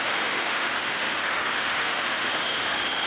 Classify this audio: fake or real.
fake